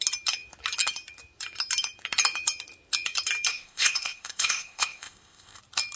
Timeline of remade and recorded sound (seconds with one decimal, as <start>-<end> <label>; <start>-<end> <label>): 0.0-3.5 recorded; 3.5-5.6 remade; 5.6-6.0 recorded

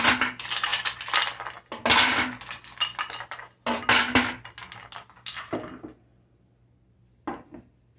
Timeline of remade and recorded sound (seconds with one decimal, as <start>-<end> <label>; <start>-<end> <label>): 0.0-8.0 recorded

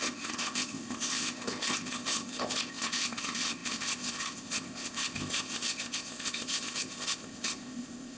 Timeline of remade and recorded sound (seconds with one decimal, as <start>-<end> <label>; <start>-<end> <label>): 0.0-8.2 remade

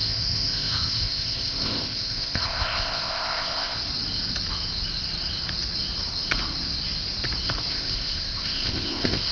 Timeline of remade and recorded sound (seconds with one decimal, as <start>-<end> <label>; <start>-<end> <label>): 0.0-3.8 remade; 3.8-7.7 recorded; 7.7-9.3 remade

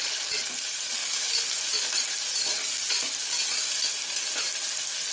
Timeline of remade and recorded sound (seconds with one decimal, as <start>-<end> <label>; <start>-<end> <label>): 0.0-5.1 recorded

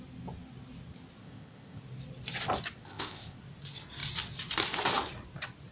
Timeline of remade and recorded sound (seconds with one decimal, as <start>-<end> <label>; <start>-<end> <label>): 0.0-1.2 recorded; 1.2-1.8 remade; 1.8-2.8 recorded; 2.8-3.4 remade; 3.4-5.7 recorded